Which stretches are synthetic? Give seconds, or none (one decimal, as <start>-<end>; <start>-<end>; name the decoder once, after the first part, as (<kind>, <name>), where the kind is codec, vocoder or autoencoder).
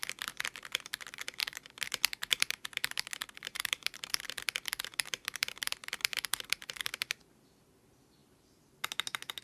1.4-4.2 (vocoder, BigVGAN v2); 4.9-7.3; 8.2-9.4